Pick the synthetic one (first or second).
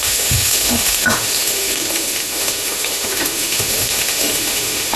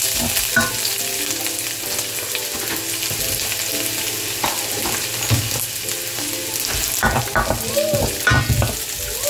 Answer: first